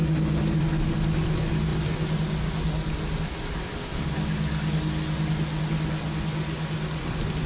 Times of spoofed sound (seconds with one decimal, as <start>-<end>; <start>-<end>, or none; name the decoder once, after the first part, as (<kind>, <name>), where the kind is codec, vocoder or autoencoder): none